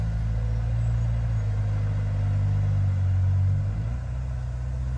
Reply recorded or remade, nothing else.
recorded